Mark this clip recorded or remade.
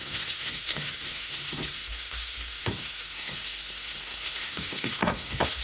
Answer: remade